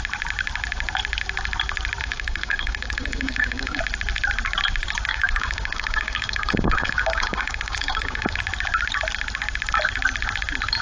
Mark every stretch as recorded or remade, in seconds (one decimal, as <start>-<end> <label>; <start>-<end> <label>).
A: 0.0-2.0 recorded; 2.0-3.8 remade; 3.8-5.1 recorded; 5.1-8.4 remade; 8.4-10.8 recorded